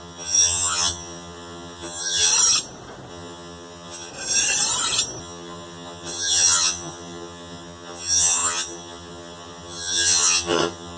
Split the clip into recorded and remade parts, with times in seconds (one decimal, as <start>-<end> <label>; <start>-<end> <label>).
0.0-2.3 remade; 2.3-3.1 recorded; 3.1-4.1 remade; 4.1-5.2 recorded; 5.2-11.0 remade